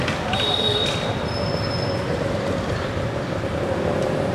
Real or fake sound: real